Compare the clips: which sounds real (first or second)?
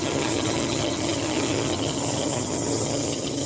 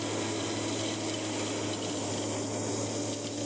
second